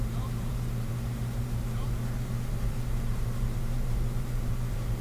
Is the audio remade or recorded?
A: remade